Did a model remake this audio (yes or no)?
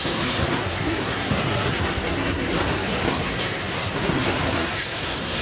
yes